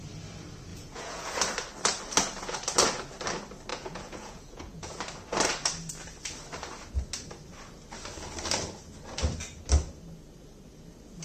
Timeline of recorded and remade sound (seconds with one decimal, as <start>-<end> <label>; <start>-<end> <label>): 0.0-0.7 recorded; 0.7-1.4 remade; 1.4-3.7 recorded; 3.7-5.0 remade; 5.0-11.2 recorded